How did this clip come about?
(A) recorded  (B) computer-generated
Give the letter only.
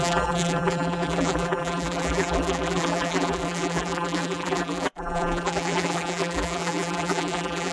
B